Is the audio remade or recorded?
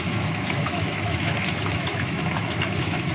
remade